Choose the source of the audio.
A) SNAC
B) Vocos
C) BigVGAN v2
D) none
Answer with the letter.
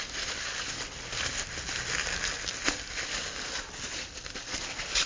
C